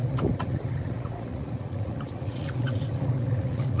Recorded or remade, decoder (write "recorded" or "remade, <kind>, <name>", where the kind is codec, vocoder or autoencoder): remade, vocoder, Vocos